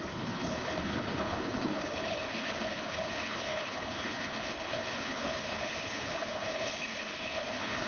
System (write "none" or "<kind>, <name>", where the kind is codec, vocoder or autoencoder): codec, HILCodec